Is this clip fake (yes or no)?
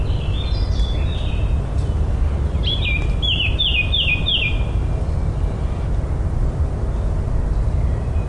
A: no